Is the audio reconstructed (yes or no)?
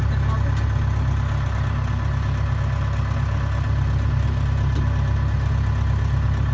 no